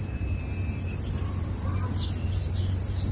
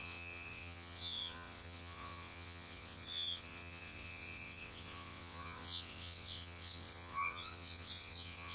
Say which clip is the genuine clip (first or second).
first